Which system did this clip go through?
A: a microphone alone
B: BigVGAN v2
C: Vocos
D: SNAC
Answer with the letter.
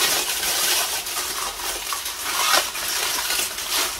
A